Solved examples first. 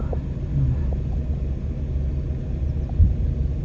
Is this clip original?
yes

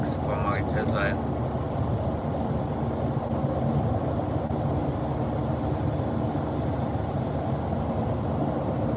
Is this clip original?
yes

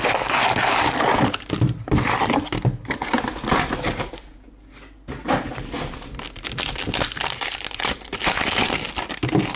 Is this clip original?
yes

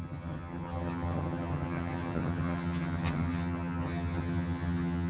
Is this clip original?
no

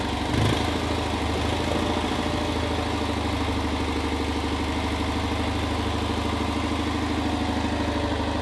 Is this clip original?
yes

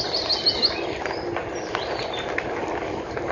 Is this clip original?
no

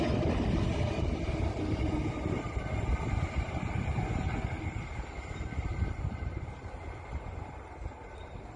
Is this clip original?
yes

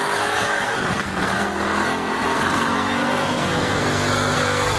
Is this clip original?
no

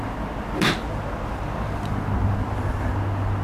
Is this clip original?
yes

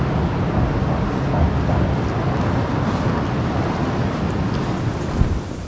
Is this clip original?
yes